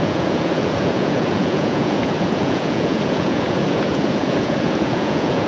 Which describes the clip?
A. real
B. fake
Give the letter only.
B